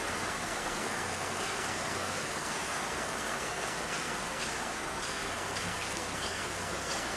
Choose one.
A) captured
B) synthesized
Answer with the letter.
B